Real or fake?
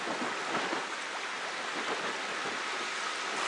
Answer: real